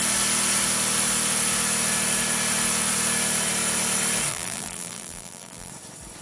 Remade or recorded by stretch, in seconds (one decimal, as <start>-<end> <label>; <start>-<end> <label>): 0.0-4.3 recorded; 4.3-5.7 remade; 5.7-6.2 recorded